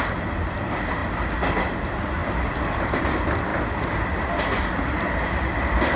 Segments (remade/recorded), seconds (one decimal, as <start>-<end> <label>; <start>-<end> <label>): 0.0-1.0 remade; 1.0-1.8 recorded; 1.8-2.2 remade; 2.2-3.0 recorded; 3.0-3.5 remade; 3.5-4.2 recorded; 4.2-6.0 remade

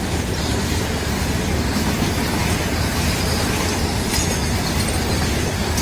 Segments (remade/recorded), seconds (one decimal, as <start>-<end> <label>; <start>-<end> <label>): 0.0-5.8 recorded

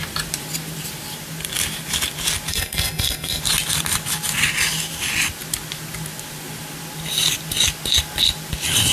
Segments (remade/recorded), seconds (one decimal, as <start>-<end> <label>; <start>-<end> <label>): 0.0-2.5 recorded; 2.5-3.4 remade; 3.4-8.9 recorded

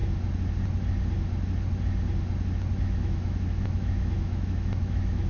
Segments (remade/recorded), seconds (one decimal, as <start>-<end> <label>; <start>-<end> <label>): 0.0-2.8 recorded; 2.8-5.3 remade